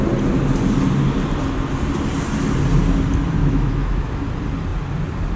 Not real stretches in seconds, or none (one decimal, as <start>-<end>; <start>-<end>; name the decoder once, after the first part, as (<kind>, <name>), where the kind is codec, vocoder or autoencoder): 3.4-4.1 (autoencoder, DAC-VAE)